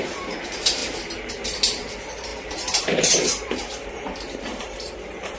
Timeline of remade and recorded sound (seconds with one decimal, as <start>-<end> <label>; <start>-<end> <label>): 0.0-5.4 remade